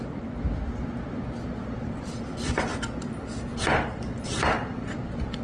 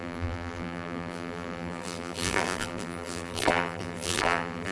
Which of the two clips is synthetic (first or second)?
second